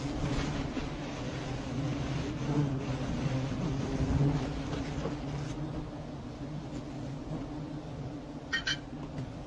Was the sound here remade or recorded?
recorded